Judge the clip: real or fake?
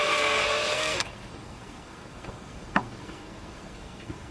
fake